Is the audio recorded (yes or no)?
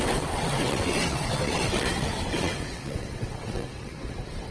no